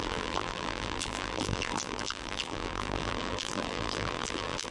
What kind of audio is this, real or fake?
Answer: fake